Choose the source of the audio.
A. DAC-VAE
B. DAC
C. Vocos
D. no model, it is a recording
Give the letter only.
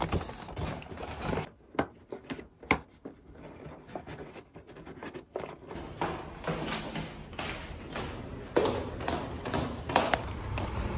D